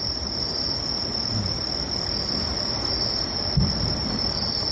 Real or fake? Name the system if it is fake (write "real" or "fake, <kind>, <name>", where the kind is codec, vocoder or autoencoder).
real